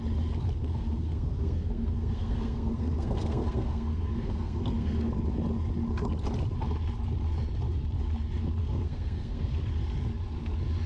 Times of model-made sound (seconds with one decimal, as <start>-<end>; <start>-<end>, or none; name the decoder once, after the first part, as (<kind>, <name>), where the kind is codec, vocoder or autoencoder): 0.6-5.1 (codec, SNAC); 8.6-9.6